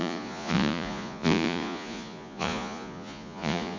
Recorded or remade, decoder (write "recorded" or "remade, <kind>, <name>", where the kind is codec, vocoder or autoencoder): remade, vocoder, Vocos